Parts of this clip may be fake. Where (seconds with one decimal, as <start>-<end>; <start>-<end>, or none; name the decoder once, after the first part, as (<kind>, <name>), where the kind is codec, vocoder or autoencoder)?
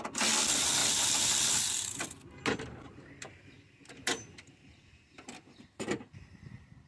0.8-1.4 (vocoder, BigVGAN v2); 2.5-6.9